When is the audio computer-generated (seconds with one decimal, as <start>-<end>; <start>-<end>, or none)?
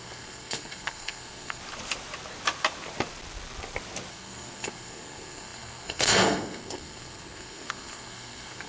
0.0-1.6; 4.1-8.7